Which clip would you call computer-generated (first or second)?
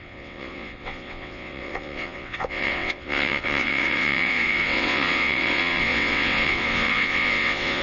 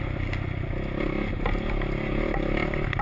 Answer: first